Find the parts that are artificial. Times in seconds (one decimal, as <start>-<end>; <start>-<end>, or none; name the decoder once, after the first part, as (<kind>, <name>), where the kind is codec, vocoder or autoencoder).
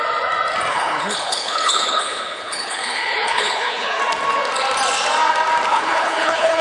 0.7-4.0 (codec, HILCodec); 5.7-6.6